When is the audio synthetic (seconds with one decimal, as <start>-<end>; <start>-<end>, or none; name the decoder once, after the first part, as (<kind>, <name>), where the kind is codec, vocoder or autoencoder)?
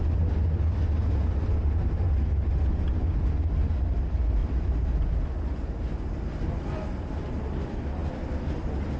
4.4-5.2 (vocoder, BigVGAN v2)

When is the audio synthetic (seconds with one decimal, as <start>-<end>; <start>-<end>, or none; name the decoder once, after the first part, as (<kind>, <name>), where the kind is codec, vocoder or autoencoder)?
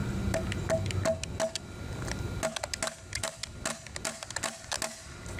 none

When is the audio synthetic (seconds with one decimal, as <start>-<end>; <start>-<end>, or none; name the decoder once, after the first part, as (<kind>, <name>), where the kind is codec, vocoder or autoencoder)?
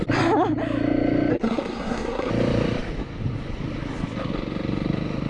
1.3-2.3 (codec, SNAC)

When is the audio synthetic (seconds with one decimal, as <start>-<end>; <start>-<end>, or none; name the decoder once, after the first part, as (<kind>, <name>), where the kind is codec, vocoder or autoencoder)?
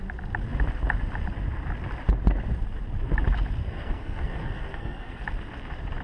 3.6-5.2 (codec, SNAC)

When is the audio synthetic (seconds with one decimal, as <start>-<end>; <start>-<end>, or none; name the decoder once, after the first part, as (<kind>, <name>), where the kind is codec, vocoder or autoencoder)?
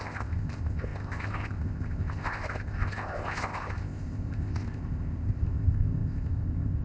0.0-6.8 (codec, ZipCodec)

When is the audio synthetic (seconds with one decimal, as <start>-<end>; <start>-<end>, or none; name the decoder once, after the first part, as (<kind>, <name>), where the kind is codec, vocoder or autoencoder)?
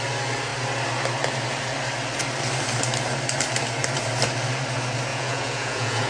5.1-6.1 (vocoder, Vocos)